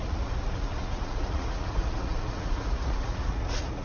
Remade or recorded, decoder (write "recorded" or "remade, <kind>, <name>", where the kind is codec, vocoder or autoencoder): remade, vocoder, Vocos